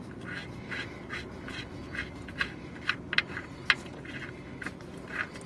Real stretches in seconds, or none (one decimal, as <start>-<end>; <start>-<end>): 0.0-5.5